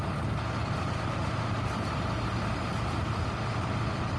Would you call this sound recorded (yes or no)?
yes